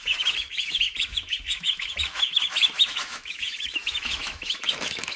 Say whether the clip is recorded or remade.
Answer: remade